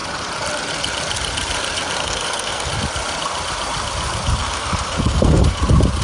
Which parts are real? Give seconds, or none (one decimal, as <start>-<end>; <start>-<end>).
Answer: 0.0-2.0; 2.7-4.4; 5.6-6.0